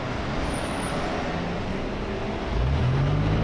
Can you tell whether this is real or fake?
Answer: real